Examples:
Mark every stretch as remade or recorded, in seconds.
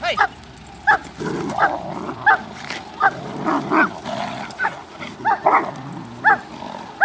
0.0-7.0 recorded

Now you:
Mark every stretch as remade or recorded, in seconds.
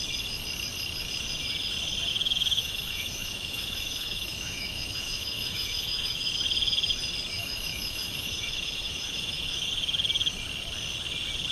0.0-2.1 recorded; 2.1-6.3 remade; 6.3-7.4 recorded; 7.4-9.7 remade; 9.7-11.5 recorded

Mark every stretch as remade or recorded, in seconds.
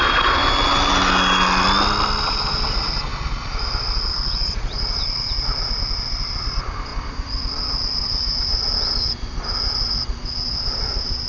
0.0-0.4 remade; 0.4-2.2 recorded; 2.2-11.3 remade